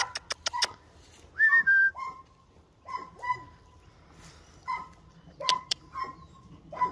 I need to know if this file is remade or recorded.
recorded